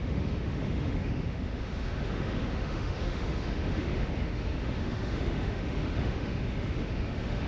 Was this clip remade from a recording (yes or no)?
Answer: yes